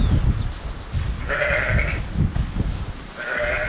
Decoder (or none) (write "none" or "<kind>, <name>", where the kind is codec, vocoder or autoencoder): none